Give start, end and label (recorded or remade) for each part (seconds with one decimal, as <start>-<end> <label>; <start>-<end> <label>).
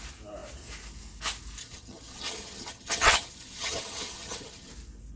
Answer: 0.0-1.6 recorded; 1.6-4.7 remade; 4.7-5.2 recorded